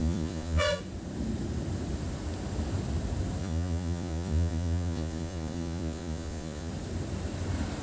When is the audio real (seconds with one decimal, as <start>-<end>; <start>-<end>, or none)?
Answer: 0.8-3.4; 6.7-7.8